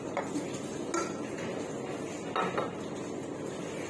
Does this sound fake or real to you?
real